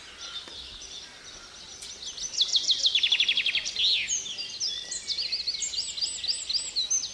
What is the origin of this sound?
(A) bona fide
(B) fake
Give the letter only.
A